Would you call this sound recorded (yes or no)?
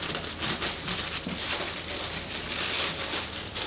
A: yes